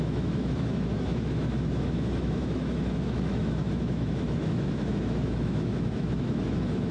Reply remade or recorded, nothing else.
remade